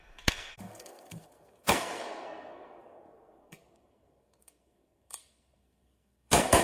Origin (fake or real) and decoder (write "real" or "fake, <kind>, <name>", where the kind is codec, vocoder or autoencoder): fake, codec, SNAC